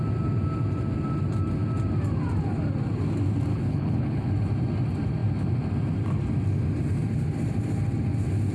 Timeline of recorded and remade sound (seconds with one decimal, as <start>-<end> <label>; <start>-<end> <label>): 0.0-3.5 recorded; 3.5-4.3 remade; 4.3-8.5 recorded